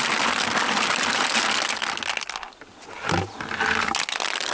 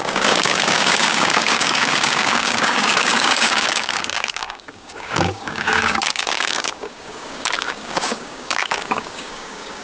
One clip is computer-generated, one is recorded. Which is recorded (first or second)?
first